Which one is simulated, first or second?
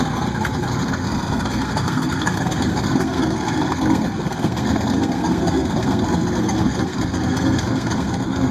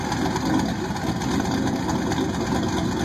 first